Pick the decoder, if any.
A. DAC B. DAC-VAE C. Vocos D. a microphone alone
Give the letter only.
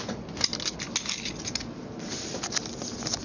D